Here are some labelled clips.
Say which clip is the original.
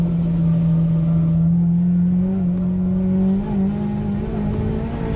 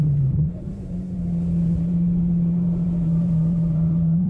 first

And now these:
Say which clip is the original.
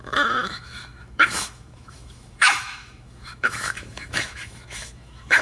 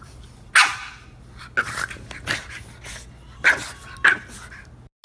second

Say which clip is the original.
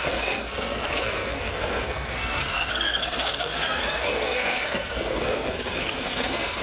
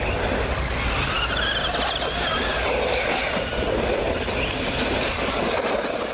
second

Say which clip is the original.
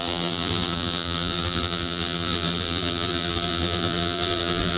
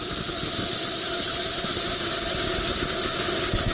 second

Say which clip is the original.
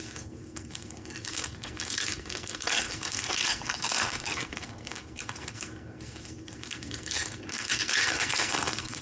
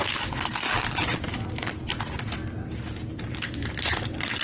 second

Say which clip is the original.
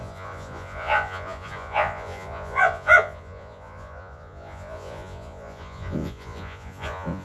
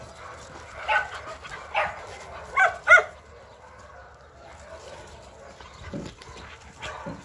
second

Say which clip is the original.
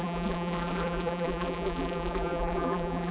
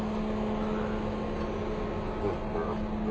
second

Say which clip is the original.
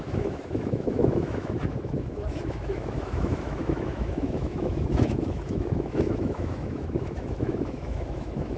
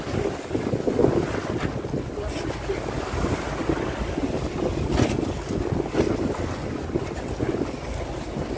second